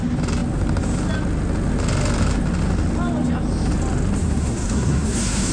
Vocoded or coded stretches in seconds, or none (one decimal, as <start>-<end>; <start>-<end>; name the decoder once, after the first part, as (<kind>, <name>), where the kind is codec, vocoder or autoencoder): 4.2-5.5 (codec, SNAC)